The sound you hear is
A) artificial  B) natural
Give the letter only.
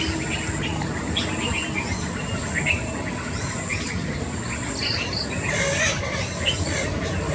B